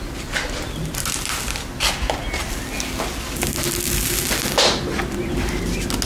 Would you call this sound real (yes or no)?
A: yes